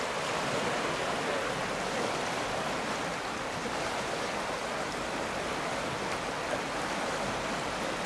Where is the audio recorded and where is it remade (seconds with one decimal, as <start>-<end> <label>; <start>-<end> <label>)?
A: 0.0-8.1 recorded